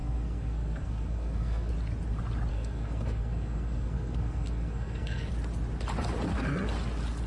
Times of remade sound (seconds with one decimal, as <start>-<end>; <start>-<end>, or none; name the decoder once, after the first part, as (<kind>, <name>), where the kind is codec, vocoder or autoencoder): 0.0-1.7 (codec, SNAC); 2.5-5.3